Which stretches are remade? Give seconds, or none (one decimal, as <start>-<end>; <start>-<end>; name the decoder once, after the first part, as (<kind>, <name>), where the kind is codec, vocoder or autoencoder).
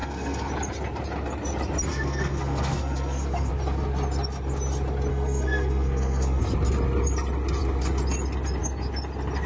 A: 0.0-0.5 (codec, SNAC); 1.9-3.5; 5.1-6.4